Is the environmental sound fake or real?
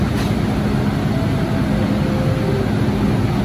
real